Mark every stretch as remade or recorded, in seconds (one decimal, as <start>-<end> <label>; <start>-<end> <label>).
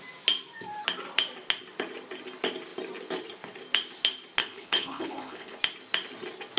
0.0-4.4 recorded; 4.4-5.6 remade; 5.6-6.6 recorded